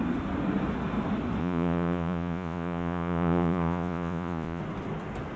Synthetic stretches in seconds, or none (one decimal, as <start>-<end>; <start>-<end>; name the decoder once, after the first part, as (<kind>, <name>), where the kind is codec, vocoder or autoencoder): 1.4-4.6 (vocoder, Vocos)